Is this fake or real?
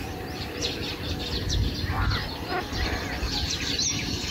real